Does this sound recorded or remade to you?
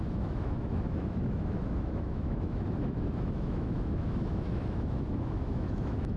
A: remade